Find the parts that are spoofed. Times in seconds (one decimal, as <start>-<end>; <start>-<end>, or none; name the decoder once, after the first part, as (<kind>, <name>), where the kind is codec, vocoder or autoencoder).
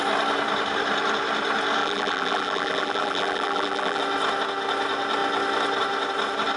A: 1.8-4.0 (vocoder, BigVGAN v2)